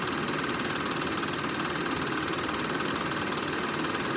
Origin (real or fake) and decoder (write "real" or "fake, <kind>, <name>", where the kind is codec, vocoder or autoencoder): real